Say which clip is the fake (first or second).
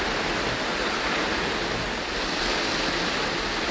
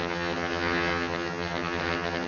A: second